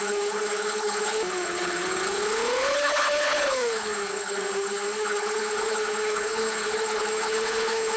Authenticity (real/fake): fake